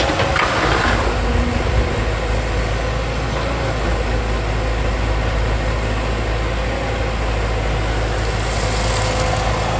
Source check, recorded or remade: recorded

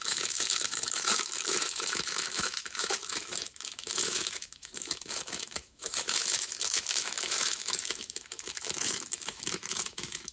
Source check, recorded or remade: remade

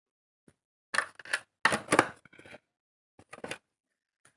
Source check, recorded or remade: recorded